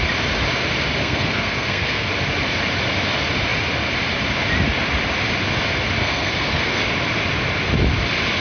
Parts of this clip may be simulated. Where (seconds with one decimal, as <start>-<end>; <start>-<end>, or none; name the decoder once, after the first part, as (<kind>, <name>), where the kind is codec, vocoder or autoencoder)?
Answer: 1.0-2.1 (codec, SNAC); 6.0-6.8